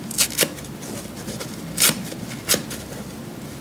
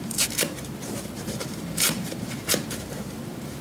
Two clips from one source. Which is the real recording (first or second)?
first